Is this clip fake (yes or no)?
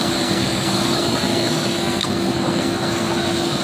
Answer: yes